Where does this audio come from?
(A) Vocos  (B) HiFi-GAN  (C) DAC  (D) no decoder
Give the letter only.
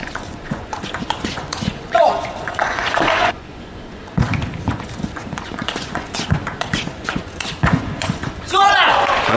A